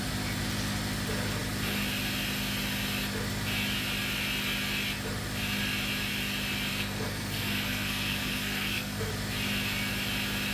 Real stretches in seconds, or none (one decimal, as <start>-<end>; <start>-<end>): 0.0-6.7; 9.1-10.5